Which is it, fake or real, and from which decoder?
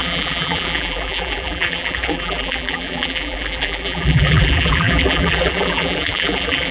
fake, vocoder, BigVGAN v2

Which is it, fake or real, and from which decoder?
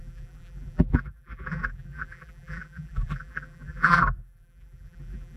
fake, vocoder, BigVGAN v2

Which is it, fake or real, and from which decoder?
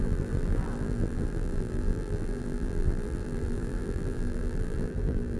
fake, vocoder, BigVGAN v2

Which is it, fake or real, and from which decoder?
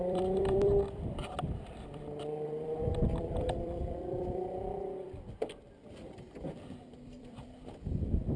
fake, vocoder, BigVGAN v2